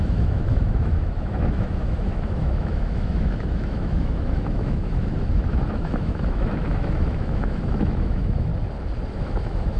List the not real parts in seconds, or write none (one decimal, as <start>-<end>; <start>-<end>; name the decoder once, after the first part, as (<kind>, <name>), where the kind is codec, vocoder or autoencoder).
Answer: 0.0-8.5 (autoencoder, DAC-VAE); 9.1-9.8